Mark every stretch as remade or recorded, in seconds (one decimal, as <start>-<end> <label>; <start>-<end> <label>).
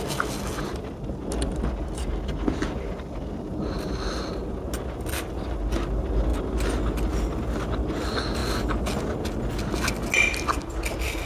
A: 0.0-11.3 recorded